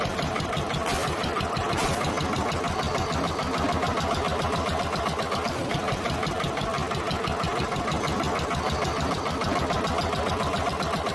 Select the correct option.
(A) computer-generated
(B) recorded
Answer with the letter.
B